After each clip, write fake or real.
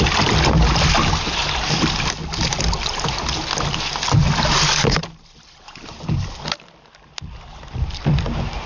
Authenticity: real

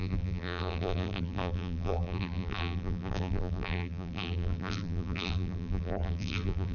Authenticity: fake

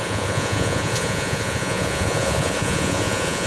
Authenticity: fake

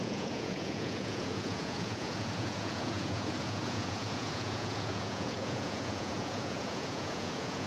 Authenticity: fake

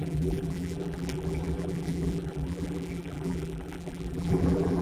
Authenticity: fake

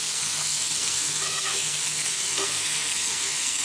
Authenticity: fake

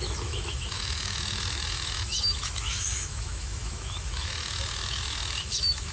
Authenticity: fake